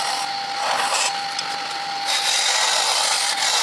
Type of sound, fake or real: real